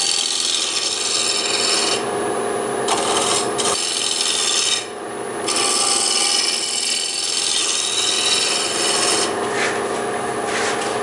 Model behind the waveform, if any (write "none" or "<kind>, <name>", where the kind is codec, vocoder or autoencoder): none